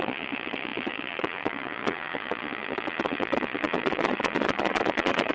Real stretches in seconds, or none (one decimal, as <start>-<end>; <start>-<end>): none